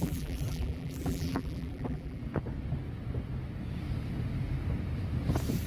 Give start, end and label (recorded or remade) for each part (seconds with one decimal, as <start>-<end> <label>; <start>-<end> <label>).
0.0-2.2 remade; 2.2-5.7 recorded